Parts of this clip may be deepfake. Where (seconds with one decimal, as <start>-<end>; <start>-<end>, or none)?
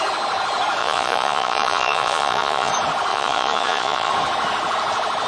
0.8-2.7; 3.1-4.1